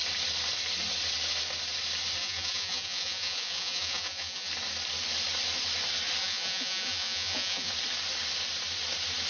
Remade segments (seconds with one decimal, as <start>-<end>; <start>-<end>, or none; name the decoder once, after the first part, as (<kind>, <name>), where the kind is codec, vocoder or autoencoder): 2.2-4.5 (vocoder, Vocos); 6.2-7.7